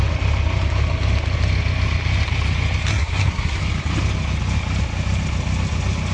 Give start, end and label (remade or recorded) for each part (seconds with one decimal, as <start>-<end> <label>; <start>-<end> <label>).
0.0-2.9 recorded; 2.9-3.6 remade; 3.6-6.1 recorded